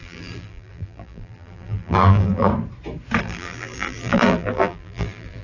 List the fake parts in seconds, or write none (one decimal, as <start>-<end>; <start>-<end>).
0.0-2.5; 3.2-5.4